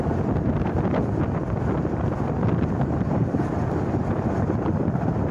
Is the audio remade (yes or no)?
no